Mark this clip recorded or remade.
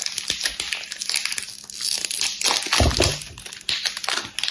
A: recorded